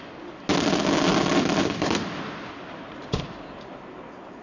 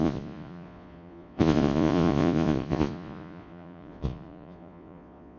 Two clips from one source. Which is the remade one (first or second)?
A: second